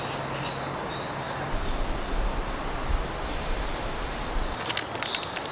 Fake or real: real